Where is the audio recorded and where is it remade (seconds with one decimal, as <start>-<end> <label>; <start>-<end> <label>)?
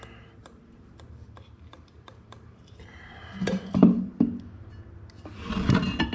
0.0-0.4 recorded; 0.4-4.1 remade; 4.1-6.1 recorded